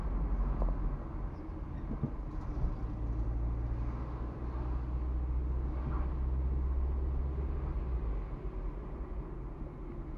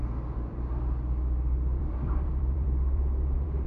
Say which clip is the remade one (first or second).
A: second